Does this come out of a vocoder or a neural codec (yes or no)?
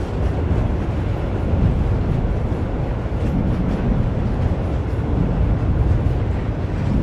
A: no